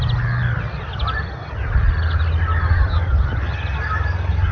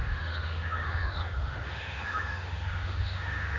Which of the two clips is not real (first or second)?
second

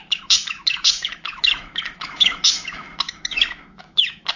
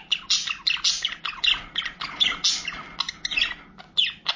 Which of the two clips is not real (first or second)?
first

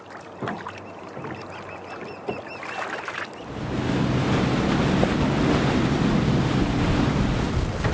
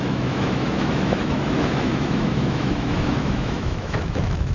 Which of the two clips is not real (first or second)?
second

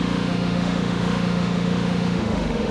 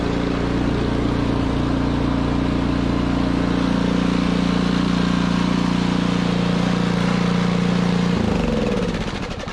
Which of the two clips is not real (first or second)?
first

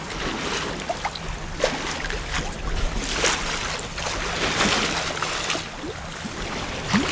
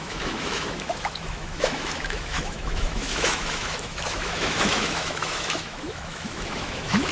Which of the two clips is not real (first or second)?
second